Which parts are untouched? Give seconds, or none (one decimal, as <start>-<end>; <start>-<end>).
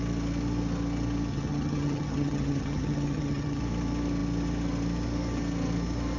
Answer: 0.0-1.3; 3.6-6.2